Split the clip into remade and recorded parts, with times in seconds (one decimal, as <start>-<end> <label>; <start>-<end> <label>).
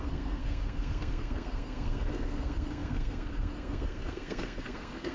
0.0-5.1 remade